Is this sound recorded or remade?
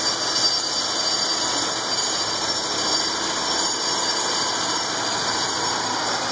recorded